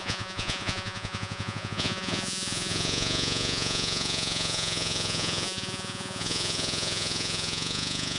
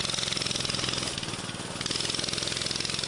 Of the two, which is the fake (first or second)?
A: first